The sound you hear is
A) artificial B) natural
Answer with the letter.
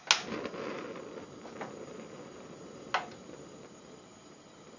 B